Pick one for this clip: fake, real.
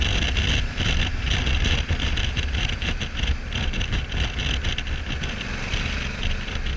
real